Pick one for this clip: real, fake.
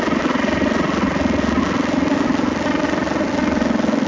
real